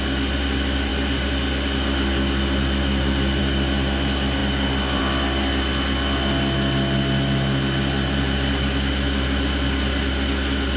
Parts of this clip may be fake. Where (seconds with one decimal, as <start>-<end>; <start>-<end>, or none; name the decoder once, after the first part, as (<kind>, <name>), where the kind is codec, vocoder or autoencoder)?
none